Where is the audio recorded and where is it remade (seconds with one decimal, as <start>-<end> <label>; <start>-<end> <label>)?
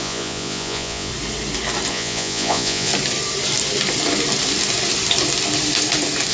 0.0-1.1 remade; 1.1-1.9 recorded; 1.9-2.9 remade; 2.9-6.3 recorded